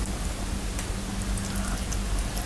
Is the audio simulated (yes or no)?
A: no